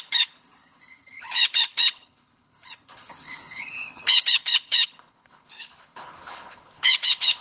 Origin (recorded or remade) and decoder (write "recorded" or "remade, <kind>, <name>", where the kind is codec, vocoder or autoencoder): remade, codec, HILCodec